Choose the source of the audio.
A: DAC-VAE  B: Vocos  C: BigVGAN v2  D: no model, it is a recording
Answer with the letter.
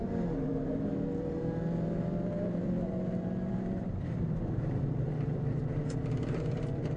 C